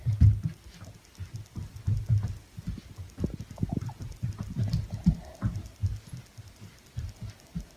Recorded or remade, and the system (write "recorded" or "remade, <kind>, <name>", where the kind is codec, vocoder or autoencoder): recorded